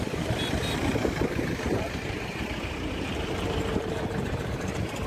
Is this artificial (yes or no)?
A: yes